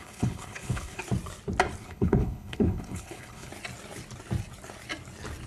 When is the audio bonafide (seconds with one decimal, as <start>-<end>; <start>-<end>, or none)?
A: 1.0-1.8; 3.5-5.5